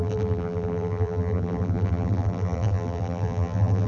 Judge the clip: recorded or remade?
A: remade